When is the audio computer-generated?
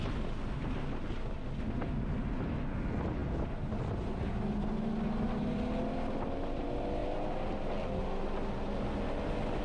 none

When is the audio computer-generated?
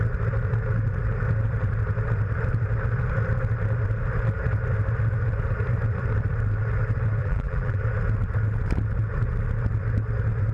7.2-7.8 (vocoder, BigVGAN v2)